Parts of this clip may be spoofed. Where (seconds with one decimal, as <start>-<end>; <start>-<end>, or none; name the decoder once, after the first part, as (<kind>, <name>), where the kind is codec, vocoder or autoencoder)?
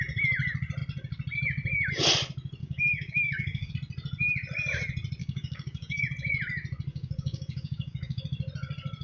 2.6-3.7 (codec, DAC); 5.2-6.0; 6.9-8.2